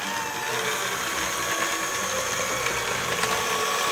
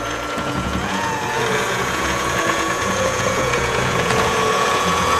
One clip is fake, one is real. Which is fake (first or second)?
second